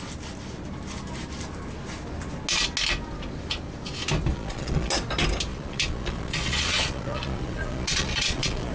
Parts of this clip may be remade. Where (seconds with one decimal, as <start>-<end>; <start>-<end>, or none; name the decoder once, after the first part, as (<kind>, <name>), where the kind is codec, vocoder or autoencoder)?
4.3-4.9 (vocoder, Vocos); 5.5-8.7